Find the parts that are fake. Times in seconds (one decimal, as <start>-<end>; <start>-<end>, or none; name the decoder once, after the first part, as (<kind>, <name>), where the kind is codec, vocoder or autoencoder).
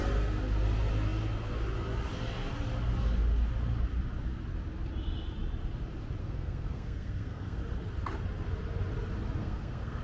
6.2-7.6 (codec, SNAC); 9.4-10.0